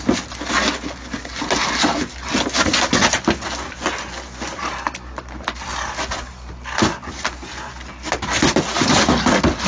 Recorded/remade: recorded